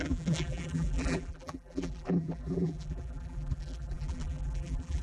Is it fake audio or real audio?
fake